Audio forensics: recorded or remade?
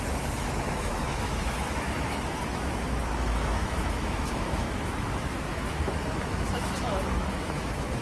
remade